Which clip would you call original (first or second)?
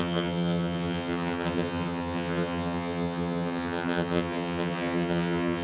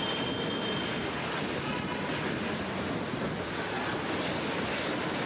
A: second